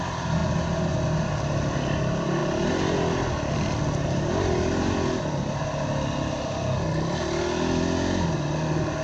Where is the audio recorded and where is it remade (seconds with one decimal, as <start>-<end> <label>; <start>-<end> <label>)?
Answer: 0.0-9.0 recorded